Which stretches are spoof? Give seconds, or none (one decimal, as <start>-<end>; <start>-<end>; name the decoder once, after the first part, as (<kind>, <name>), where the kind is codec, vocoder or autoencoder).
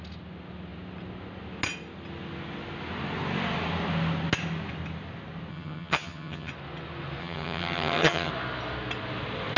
5.5-6.5 (vocoder, HiFi-GAN); 7.2-8.3